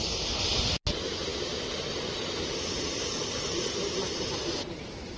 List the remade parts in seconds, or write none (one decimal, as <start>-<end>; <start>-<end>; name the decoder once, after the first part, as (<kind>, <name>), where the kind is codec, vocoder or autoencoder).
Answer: none